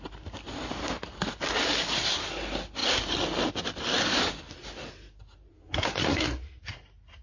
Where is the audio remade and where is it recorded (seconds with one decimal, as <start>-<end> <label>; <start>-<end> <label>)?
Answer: 0.0-5.5 recorded; 5.5-6.6 remade; 6.6-7.2 recorded

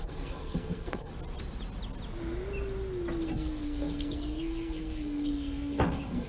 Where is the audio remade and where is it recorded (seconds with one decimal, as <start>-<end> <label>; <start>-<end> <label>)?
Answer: 0.0-1.1 remade; 1.1-3.2 recorded; 3.2-6.3 remade

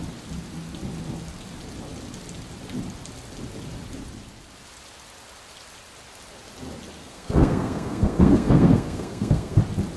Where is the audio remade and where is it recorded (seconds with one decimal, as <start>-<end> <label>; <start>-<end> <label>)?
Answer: 0.0-7.0 recorded; 7.0-9.6 remade; 9.6-10.0 recorded

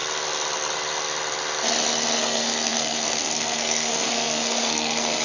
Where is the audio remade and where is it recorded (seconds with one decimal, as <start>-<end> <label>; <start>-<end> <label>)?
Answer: 0.0-2.1 recorded; 2.1-5.2 remade

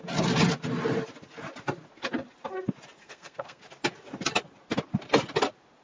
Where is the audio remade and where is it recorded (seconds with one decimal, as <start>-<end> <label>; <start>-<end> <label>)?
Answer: 0.0-3.0 recorded; 3.0-3.6 remade; 3.6-5.8 recorded

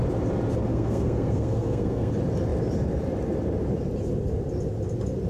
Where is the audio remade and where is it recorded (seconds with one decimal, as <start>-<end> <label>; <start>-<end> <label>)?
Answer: 0.0-0.7 recorded; 0.7-2.1 remade; 2.1-5.3 recorded

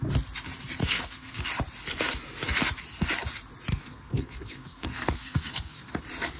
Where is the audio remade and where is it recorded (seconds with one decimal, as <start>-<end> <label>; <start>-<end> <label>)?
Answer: 0.0-0.8 recorded; 0.8-1.4 remade; 1.4-3.7 recorded; 3.7-6.0 remade; 6.0-6.4 recorded